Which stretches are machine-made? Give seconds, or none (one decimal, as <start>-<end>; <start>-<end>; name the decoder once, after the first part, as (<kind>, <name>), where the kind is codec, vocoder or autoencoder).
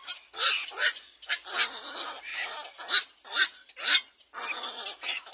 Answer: none